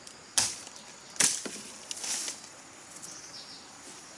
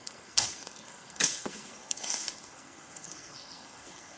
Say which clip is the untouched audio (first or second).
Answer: first